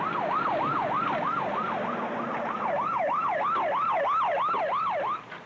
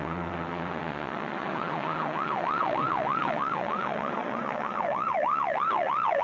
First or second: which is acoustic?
first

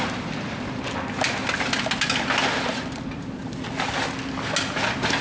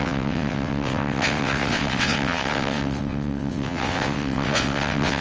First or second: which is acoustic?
first